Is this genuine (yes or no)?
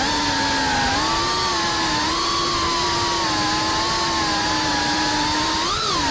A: yes